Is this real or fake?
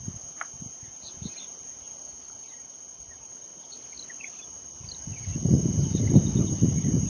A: real